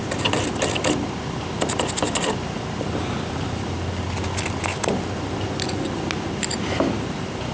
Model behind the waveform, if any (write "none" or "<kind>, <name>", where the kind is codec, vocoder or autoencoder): none